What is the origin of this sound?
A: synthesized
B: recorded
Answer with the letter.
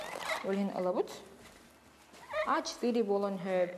B